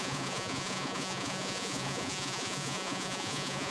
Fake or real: fake